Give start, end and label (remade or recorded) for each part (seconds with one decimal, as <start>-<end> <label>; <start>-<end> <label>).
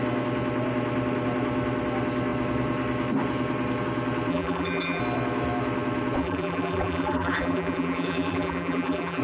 0.0-4.3 recorded; 4.3-5.0 remade; 5.0-6.2 recorded; 6.2-9.2 remade